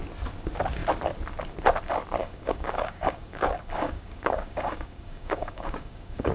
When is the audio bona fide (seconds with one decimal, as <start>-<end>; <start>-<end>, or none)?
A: 0.0-2.2